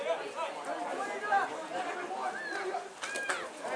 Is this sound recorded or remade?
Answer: recorded